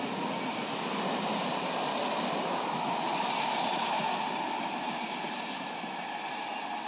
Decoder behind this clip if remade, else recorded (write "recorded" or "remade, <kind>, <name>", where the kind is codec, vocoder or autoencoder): recorded